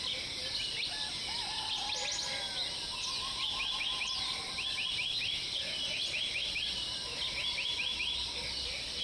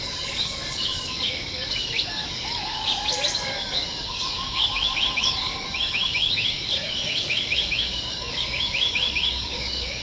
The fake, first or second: second